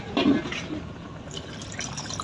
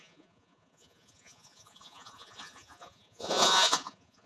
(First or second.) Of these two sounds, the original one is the first